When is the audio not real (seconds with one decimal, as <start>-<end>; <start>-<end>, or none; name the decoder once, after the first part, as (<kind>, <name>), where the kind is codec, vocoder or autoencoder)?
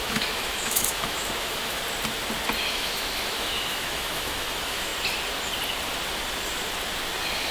0.0-1.8 (autoencoder, DAC-VAE); 2.7-4.9